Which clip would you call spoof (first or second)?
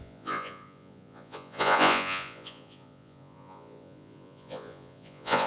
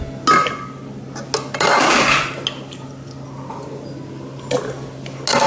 first